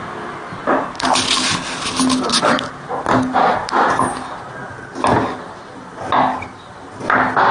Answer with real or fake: real